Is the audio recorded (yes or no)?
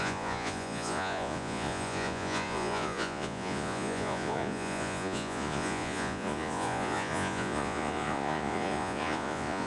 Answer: no